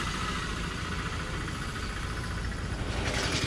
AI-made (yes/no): no